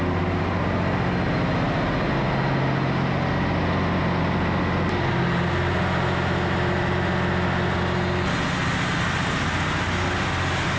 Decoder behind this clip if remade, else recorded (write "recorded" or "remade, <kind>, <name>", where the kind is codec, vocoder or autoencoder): recorded